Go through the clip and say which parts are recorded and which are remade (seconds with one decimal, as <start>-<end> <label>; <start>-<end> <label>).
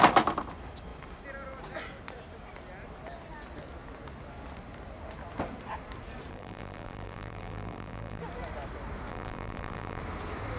0.0-6.3 recorded; 6.3-8.2 remade; 8.2-9.1 recorded; 9.1-10.0 remade; 10.0-10.6 recorded